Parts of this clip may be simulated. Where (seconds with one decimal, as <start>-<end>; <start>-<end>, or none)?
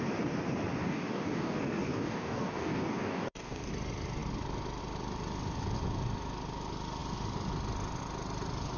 0.8-3.7